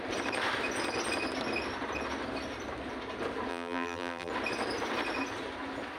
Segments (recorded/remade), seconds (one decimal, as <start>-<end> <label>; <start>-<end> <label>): 0.0-3.5 recorded; 3.5-4.3 remade; 4.3-6.0 recorded